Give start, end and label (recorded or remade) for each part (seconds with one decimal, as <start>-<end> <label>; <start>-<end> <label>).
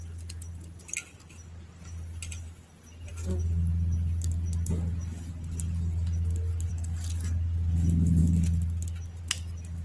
0.0-9.8 recorded